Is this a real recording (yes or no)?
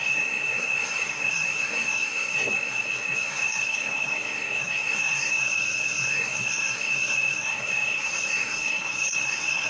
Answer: no